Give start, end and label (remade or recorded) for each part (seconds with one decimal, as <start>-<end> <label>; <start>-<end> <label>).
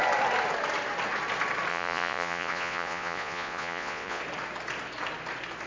0.0-1.7 recorded; 1.7-4.2 remade; 4.2-5.7 recorded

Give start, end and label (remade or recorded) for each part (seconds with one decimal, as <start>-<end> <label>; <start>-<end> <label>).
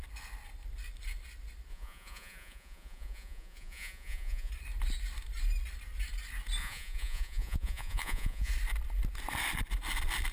0.0-1.7 recorded; 1.7-4.5 remade; 4.5-6.6 recorded; 6.6-8.5 remade; 8.5-10.3 recorded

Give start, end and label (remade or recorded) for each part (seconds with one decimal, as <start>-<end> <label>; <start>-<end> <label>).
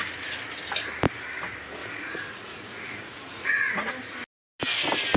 0.0-1.8 recorded; 1.8-3.5 remade; 3.5-5.2 recorded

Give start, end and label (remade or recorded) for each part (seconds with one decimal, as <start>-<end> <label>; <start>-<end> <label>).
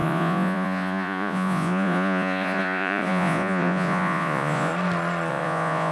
0.0-4.7 remade; 4.7-5.3 recorded; 5.3-5.9 remade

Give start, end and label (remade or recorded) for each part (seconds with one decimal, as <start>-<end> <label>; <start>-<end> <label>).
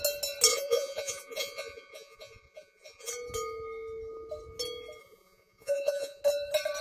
0.0-0.5 recorded; 0.5-3.1 remade; 3.1-5.0 recorded; 5.0-6.2 remade; 6.2-6.8 recorded